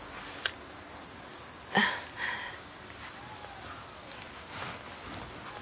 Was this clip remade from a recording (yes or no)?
no